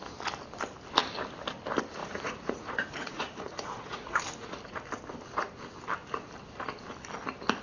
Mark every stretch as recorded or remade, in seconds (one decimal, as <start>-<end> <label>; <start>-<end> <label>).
0.0-2.0 recorded; 2.0-4.2 remade; 4.2-7.6 recorded